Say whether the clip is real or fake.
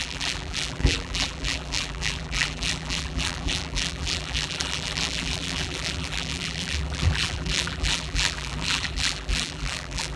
fake